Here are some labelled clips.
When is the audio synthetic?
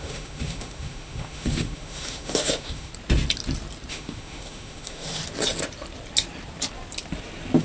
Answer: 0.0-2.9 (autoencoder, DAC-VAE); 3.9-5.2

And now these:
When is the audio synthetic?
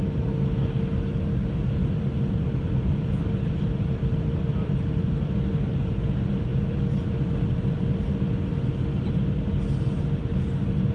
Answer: 1.8-5.1 (vocoder, BigVGAN v2); 6.5-8.0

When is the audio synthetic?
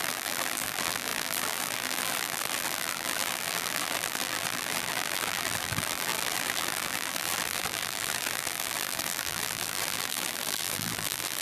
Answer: 0.0-11.4 (vocoder, BigVGAN v2)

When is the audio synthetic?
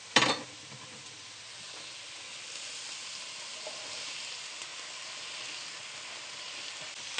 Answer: none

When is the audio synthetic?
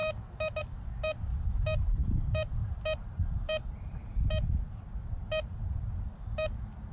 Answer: none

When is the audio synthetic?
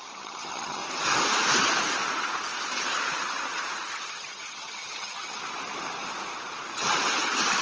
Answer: 0.0-0.8 (vocoder, HiFi-GAN); 4.1-5.4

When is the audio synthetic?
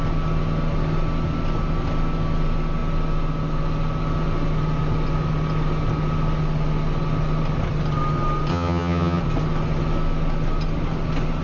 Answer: 8.5-9.2 (vocoder, HiFi-GAN)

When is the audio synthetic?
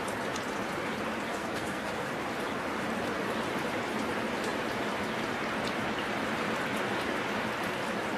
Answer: 1.3-2.1 (codec, SNAC)